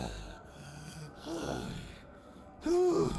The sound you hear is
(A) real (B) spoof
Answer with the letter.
B